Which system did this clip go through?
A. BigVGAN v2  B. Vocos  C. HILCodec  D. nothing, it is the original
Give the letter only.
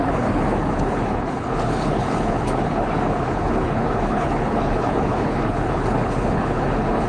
C